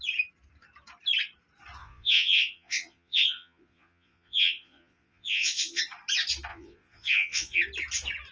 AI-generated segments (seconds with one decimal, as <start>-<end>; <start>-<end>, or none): 1.8-5.8; 6.5-7.6